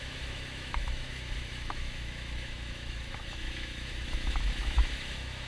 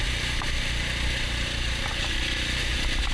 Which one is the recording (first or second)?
second